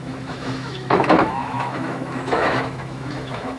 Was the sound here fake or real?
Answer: fake